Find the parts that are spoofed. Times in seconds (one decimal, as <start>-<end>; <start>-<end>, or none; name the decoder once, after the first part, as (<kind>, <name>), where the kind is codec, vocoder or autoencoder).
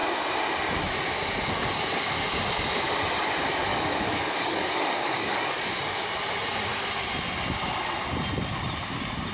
3.7-5.8 (codec, DAC)